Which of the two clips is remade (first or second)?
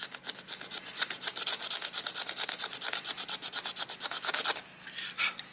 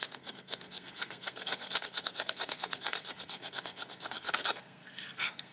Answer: second